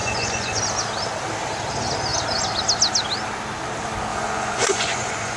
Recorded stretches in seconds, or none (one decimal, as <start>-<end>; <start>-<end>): 0.6-4.1

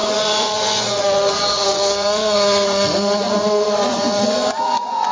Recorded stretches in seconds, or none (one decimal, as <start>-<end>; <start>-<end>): none

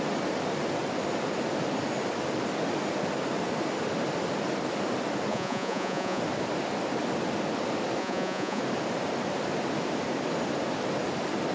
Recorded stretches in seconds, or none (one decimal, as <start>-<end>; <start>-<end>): 0.0-5.3; 6.2-8.0; 8.6-11.5

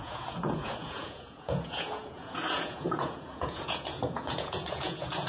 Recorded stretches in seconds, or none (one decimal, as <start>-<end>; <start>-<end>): none

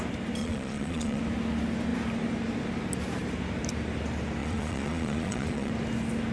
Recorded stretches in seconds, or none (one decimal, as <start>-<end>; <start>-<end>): 0.0-0.4; 1.2-4.4; 5.7-6.3

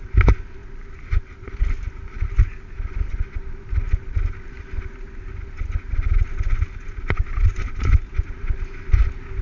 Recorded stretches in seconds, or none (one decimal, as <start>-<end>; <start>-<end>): 0.0-9.4

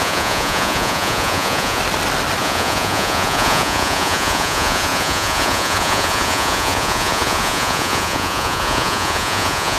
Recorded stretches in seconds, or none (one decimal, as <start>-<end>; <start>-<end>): 1.8-2.4